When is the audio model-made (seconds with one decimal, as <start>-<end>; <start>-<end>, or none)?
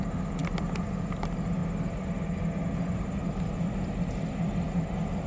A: none